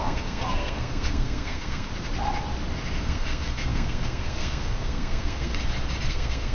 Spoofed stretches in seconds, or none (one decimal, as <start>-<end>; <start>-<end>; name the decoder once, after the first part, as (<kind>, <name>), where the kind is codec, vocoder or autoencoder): 0.0-1.9 (codec, SNAC); 3.0-5.5; 6.1-6.5